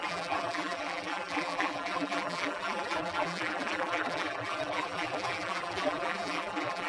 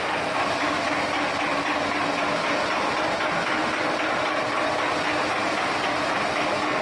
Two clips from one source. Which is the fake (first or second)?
first